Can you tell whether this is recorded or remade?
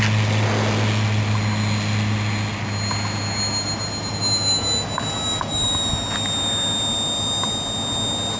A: recorded